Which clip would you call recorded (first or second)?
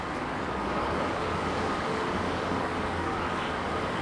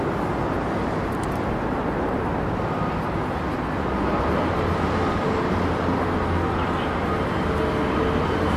second